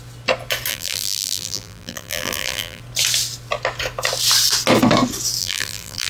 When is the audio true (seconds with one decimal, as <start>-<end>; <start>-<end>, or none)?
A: 0.0-0.7; 2.8-5.4